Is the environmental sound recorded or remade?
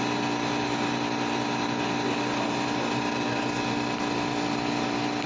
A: recorded